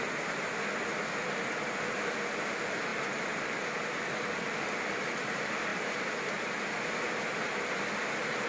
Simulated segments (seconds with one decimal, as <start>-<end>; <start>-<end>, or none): 2.9-3.7; 5.7-6.7